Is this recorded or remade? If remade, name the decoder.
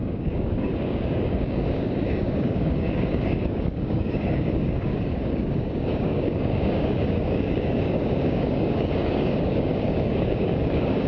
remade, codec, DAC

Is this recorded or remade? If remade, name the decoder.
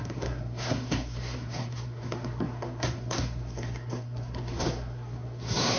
remade, codec, SNAC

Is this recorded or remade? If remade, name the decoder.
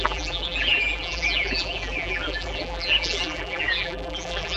remade, vocoder, BigVGAN v2